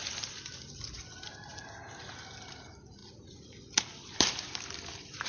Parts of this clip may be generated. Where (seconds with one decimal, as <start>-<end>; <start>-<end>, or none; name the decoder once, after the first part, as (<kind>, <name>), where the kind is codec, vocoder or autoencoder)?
none